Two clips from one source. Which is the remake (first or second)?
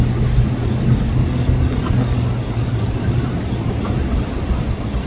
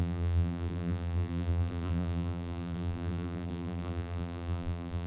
second